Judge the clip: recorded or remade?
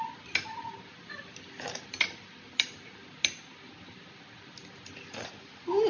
recorded